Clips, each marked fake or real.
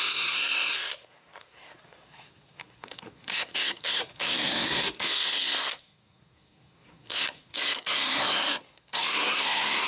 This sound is fake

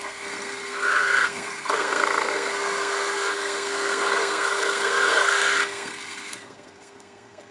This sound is fake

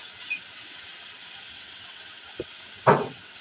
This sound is fake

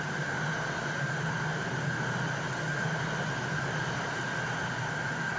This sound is real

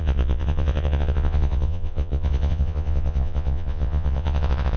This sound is fake